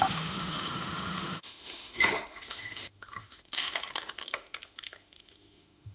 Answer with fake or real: fake